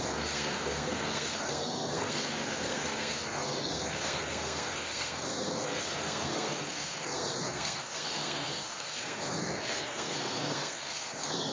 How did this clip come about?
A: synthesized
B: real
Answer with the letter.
A